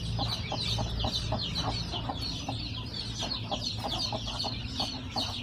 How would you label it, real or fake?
real